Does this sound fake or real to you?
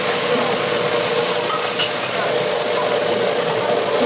fake